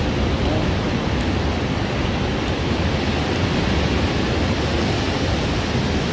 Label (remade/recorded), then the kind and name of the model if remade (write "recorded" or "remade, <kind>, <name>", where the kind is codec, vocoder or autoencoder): recorded